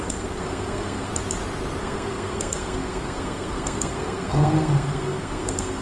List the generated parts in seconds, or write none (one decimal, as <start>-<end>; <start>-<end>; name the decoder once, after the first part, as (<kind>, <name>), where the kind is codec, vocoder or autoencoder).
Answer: 0.0-1.1 (codec, SNAC); 1.8-5.8

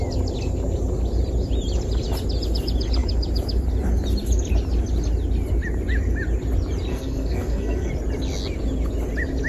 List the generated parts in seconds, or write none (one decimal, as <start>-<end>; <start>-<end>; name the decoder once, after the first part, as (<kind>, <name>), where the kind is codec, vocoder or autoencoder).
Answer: 6.9-7.9 (codec, SNAC)

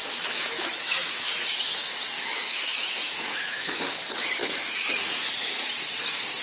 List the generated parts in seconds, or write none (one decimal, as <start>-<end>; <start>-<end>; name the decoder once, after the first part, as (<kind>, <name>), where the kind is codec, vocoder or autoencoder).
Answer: 0.0-3.8 (autoencoder, DAC-VAE); 4.4-5.3